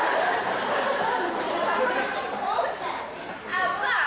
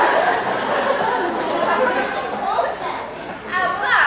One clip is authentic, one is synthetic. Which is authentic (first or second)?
second